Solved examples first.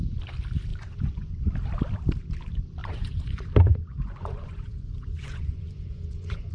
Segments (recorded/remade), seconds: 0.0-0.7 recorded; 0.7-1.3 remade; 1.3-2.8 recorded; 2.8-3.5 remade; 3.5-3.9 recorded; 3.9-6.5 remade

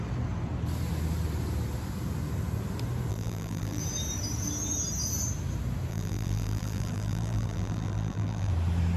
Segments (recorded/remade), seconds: 0.0-3.1 recorded; 3.1-3.8 remade; 3.8-5.9 recorded; 5.9-8.5 remade; 8.5-9.0 recorded

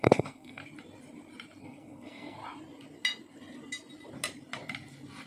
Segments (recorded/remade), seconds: 0.0-0.6 remade; 0.6-1.6 recorded; 1.6-2.4 remade; 2.4-5.3 recorded

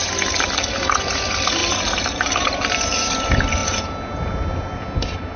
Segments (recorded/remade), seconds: 0.0-1.6 recorded; 1.6-3.1 remade; 3.1-3.6 recorded; 3.6-4.8 remade; 4.8-5.4 recorded

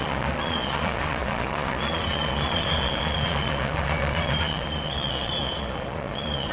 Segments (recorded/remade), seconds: 0.0-6.5 remade

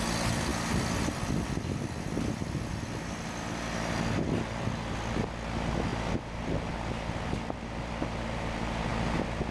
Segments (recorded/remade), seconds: 0.0-9.5 recorded

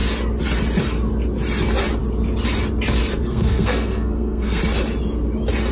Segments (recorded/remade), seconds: 0.0-3.2 recorded; 3.2-4.6 remade; 4.6-5.7 recorded